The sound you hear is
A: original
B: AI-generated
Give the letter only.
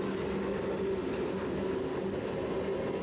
A